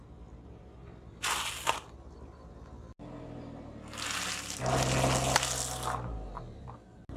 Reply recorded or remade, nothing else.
recorded